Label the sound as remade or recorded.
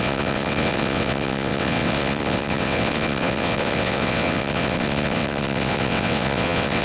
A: remade